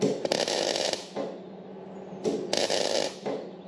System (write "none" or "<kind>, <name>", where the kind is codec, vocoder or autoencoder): none